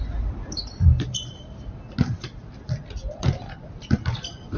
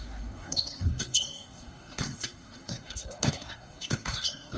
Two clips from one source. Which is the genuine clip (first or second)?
first